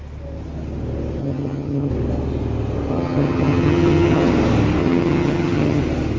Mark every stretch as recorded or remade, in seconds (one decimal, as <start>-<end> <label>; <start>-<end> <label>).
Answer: 0.0-1.2 recorded; 1.2-1.9 remade; 1.9-2.9 recorded; 2.9-4.3 remade; 4.3-4.8 recorded; 4.8-5.8 remade; 5.8-6.2 recorded